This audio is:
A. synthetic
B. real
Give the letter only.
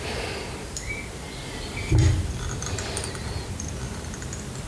A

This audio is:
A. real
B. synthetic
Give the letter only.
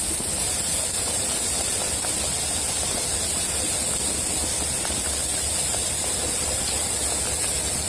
A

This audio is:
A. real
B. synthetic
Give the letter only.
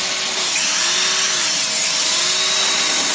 A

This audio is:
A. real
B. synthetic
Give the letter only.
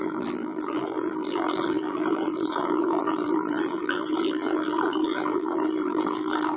B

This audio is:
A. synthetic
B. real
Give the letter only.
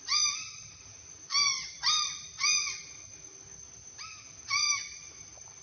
A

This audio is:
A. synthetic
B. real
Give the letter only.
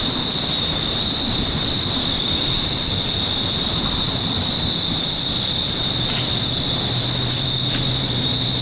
A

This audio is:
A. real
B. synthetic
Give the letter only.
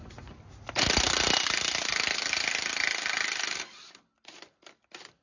A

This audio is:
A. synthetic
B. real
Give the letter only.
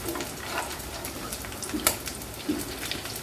A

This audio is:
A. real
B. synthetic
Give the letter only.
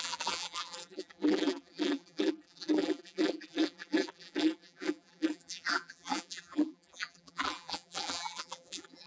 B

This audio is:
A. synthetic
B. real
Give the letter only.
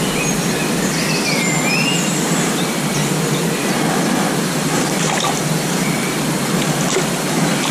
B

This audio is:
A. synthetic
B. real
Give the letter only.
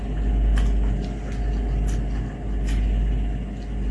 B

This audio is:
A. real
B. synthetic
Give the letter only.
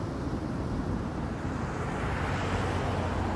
A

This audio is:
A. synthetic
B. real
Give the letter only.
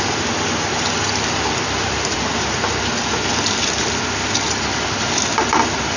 A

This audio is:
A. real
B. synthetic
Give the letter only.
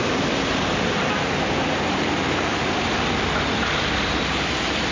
B